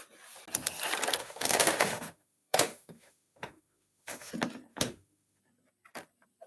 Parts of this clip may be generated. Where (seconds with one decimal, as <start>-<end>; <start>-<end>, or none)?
1.2-4.3; 4.7-5.4